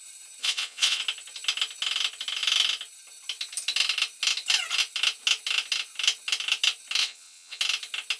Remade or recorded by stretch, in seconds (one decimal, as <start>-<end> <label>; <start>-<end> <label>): 0.0-0.4 recorded; 0.4-1.0 remade; 1.0-7.0 recorded; 7.0-7.6 remade; 7.6-8.2 recorded